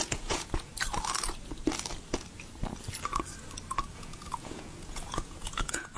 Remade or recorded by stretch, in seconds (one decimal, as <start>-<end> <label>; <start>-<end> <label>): 0.0-0.7 remade; 0.7-3.9 recorded; 3.9-6.0 remade